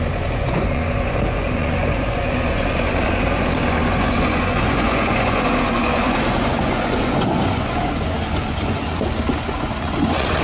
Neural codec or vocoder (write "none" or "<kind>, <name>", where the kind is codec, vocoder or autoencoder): vocoder, Vocos